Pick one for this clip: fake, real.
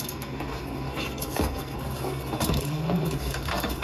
fake